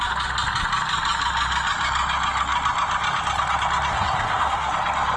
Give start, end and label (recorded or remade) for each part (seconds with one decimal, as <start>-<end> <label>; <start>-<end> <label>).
0.0-3.9 recorded; 3.9-4.7 remade; 4.7-5.2 recorded